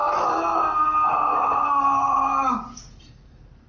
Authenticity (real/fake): real